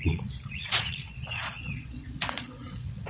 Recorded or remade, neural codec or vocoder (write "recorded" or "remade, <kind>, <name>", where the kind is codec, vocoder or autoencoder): remade, vocoder, Vocos